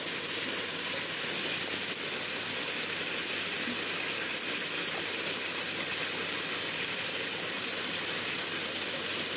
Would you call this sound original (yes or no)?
yes